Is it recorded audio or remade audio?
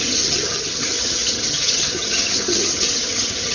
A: remade